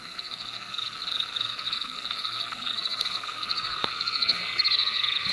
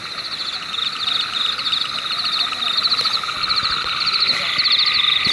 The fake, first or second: first